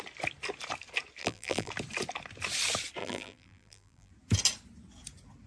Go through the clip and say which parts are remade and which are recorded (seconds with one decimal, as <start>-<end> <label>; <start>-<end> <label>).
0.0-1.2 recorded; 1.2-1.7 remade; 1.7-3.0 recorded; 3.0-4.1 remade; 4.1-5.5 recorded